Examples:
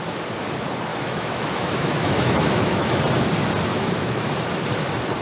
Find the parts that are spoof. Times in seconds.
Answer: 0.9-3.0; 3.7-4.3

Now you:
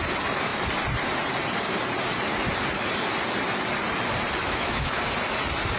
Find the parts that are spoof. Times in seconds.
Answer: 4.4-5.0

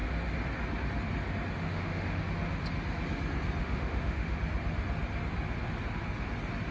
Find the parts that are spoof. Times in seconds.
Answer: 1.6-2.2; 3.6-4.4

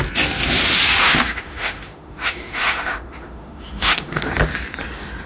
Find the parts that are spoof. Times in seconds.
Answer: 1.0-4.2

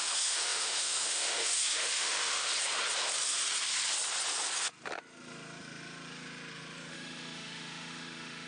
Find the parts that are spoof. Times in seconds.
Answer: 0.0-2.5; 6.9-8.5

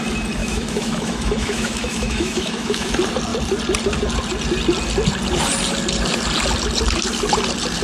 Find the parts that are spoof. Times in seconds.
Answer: 0.4-2.9